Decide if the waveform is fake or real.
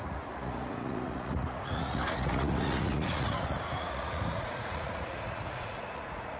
fake